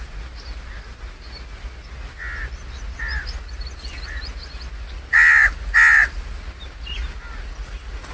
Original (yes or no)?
yes